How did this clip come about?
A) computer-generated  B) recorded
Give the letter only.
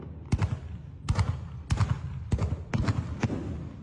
B